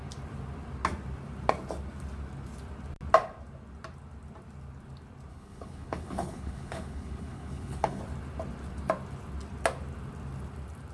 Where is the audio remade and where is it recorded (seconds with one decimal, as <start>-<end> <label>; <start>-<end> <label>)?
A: 0.0-5.3 recorded; 5.3-8.0 remade; 8.0-10.9 recorded